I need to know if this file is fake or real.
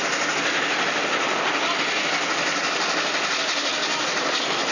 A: real